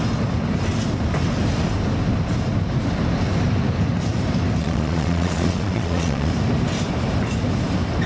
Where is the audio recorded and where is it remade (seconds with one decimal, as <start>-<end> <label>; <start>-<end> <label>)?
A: 0.0-4.6 recorded; 4.6-6.3 remade; 6.3-8.1 recorded